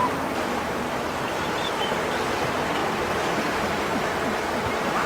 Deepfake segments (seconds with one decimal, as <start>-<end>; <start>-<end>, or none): 0.0-2.4